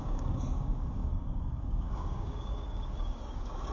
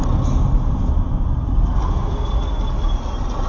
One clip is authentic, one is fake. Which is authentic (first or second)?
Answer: second